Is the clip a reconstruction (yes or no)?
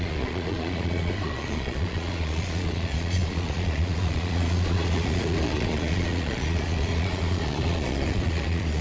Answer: yes